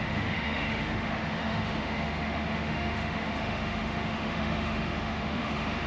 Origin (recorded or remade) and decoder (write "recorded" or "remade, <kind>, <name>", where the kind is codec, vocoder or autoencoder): remade, autoencoder, DAC-VAE